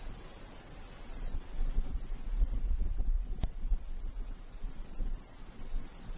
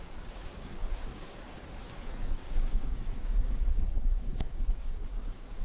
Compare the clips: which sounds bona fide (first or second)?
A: first